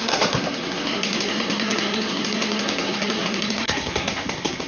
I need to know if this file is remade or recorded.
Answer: remade